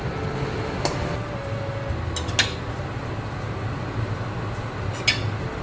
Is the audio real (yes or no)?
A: yes